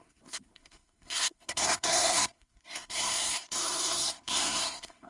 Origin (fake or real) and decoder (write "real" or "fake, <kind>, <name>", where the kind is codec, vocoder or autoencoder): fake, codec, SNAC